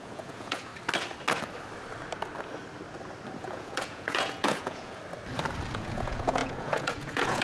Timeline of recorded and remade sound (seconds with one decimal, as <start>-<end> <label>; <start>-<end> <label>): 0.0-0.7 remade; 0.7-3.4 recorded; 3.4-5.0 remade; 5.0-5.7 recorded; 5.7-7.4 remade